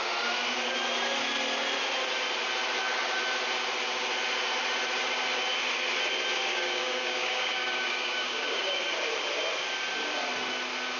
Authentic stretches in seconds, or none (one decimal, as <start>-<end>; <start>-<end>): 0.0-6.5; 8.7-11.0